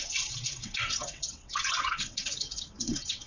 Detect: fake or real fake